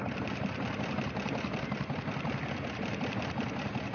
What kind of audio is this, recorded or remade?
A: recorded